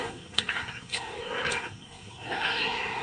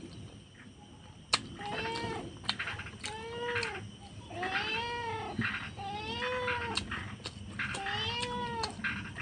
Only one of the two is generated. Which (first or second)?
first